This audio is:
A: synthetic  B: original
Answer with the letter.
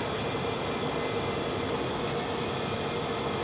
A